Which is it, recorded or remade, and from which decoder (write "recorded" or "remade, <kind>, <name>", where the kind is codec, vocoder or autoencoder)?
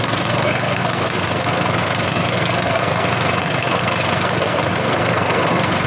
remade, codec, SNAC